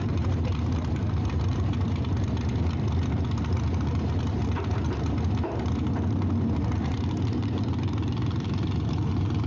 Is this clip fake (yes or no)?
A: yes